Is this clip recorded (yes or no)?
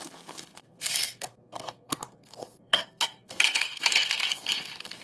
no